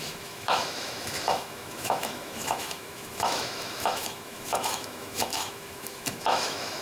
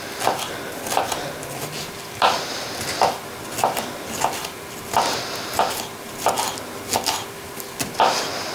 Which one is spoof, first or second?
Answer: first